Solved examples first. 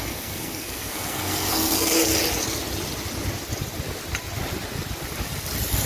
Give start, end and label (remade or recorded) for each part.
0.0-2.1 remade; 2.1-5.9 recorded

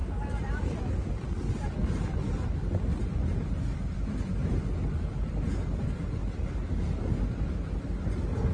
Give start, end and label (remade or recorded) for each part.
0.0-8.5 recorded

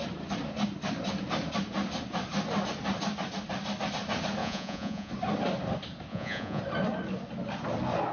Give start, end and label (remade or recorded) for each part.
0.0-4.4 recorded; 4.4-5.1 remade; 5.1-6.1 recorded; 6.1-6.6 remade; 6.6-8.1 recorded

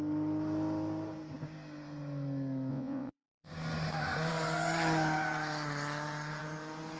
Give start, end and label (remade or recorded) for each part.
0.0-2.7 recorded; 2.7-3.5 remade; 3.5-7.0 recorded

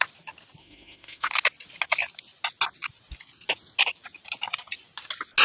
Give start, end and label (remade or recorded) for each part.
0.0-0.6 recorded; 0.6-1.3 remade; 1.3-5.4 recorded